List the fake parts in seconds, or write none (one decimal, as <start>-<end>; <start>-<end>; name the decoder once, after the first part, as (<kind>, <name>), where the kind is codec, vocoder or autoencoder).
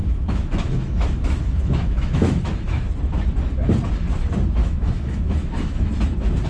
0.0-2.9 (autoencoder, DAC-VAE); 4.6-5.9